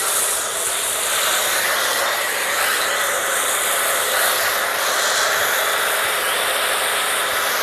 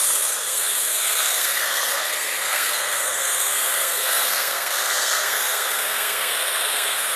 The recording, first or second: first